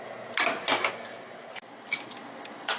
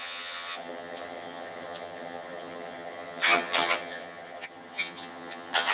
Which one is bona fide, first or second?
first